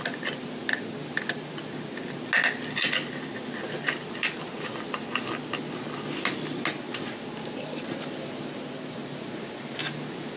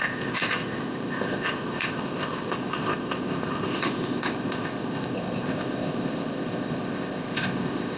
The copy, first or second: second